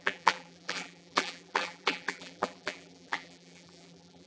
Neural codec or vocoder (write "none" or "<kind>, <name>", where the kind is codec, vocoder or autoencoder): vocoder, BigVGAN v2